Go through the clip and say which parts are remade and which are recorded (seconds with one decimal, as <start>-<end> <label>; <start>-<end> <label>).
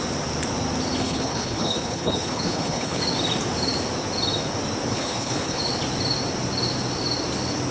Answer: 0.0-1.0 recorded; 1.0-3.0 remade; 3.0-4.9 recorded; 4.9-5.6 remade; 5.6-7.7 recorded